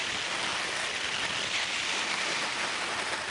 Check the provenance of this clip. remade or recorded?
recorded